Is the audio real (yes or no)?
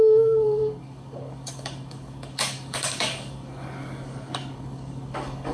no